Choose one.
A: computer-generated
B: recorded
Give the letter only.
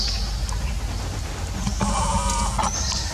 B